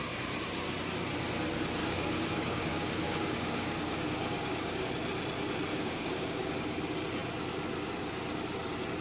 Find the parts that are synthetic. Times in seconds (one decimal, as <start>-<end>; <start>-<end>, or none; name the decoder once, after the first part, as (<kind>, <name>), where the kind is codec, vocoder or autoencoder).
1.8-4.9 (codec, DAC); 5.7-6.5